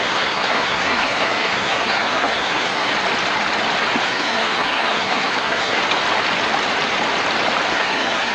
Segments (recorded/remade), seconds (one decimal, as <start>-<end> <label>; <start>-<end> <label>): 0.0-2.9 remade; 2.9-4.0 recorded; 4.0-5.8 remade; 5.8-7.7 recorded; 7.7-8.3 remade